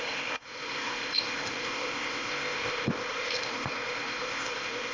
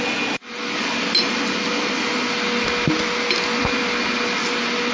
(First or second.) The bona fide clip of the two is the second